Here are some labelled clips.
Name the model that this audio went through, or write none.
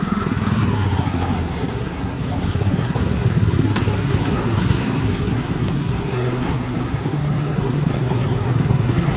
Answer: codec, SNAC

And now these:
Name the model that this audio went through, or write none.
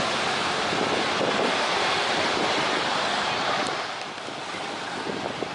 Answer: none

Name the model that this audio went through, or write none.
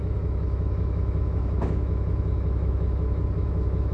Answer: autoencoder, DAC-VAE